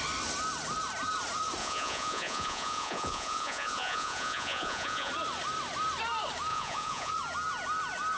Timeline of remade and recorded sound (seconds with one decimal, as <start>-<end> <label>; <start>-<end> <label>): 0.0-1.6 recorded; 1.6-5.1 remade; 5.1-6.5 recorded; 6.5-7.1 remade; 7.1-8.2 recorded